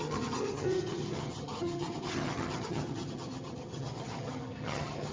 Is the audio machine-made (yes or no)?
yes